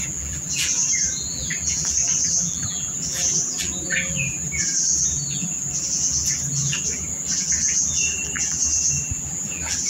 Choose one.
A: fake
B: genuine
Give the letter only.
A